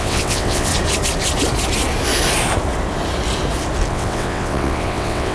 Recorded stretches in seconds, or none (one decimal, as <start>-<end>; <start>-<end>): 0.7-3.9